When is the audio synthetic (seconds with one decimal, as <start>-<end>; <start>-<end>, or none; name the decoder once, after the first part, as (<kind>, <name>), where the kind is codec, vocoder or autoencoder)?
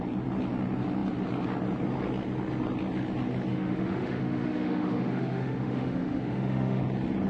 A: 3.5-6.8 (autoencoder, DAC-VAE)